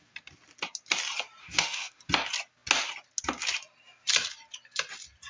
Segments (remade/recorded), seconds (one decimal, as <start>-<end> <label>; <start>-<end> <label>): 0.0-1.4 recorded; 1.4-2.0 remade; 2.0-5.3 recorded